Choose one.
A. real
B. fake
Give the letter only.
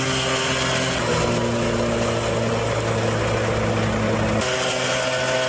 A